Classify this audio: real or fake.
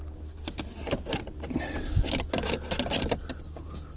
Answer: real